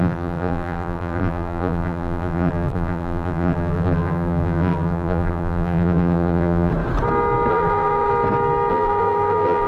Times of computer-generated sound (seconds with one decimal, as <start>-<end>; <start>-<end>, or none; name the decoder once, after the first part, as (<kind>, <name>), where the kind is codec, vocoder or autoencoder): 0.0-6.7 (vocoder, BigVGAN v2); 7.5-8.1; 8.7-9.7